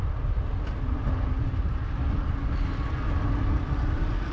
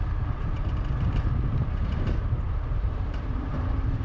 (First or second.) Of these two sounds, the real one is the first